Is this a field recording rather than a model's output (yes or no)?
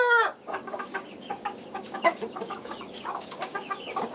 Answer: no